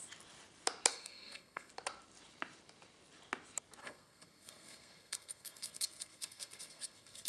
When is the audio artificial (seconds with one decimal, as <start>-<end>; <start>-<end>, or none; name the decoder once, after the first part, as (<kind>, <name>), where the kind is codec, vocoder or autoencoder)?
0.9-1.7 (codec, SNAC); 3.8-7.3